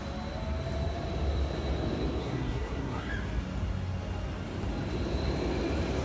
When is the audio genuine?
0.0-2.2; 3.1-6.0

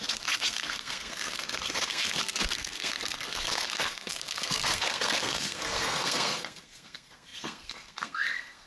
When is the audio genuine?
none

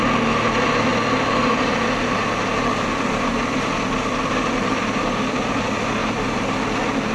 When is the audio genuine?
0.0-7.1

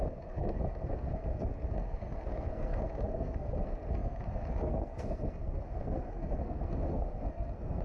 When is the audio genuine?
none

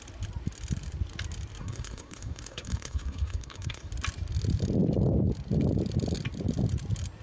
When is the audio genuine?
0.0-1.6; 3.9-7.2

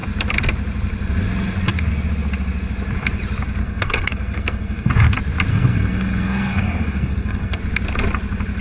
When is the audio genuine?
0.0-3.6; 4.9-5.5; 7.6-8.6

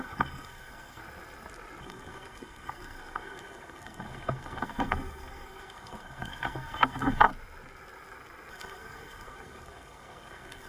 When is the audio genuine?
1.0-1.8; 7.3-8.5